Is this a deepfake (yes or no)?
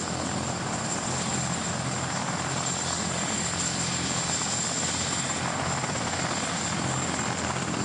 no